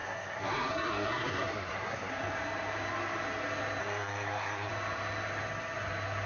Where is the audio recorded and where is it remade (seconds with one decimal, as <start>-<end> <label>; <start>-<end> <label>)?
0.0-2.1 remade; 2.1-3.8 recorded; 3.8-4.7 remade; 4.7-6.3 recorded